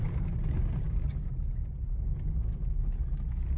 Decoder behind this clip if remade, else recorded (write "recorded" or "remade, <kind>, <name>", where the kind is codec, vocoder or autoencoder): recorded